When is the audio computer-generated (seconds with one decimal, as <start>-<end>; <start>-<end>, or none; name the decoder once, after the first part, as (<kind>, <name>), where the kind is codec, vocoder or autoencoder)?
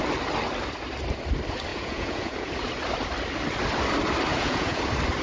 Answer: 1.7-2.5 (vocoder, Vocos); 4.3-4.8